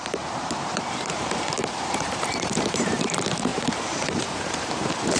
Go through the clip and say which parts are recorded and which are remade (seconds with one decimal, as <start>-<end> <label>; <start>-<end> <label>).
0.0-5.2 remade